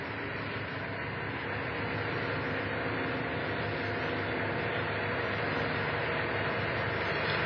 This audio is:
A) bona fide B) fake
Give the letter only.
A